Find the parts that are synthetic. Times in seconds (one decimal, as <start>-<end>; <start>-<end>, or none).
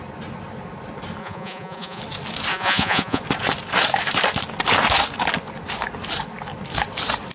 1.2-2.0; 2.5-3.2